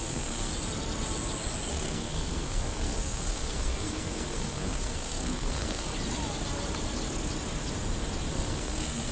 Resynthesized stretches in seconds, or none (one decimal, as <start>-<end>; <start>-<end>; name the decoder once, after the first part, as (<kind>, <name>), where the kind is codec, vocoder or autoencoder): 0.0-0.5 (codec, SNAC); 1.7-5.9; 8.3-9.1